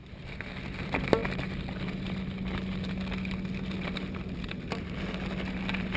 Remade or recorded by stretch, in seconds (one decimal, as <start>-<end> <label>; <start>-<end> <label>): 0.0-6.0 recorded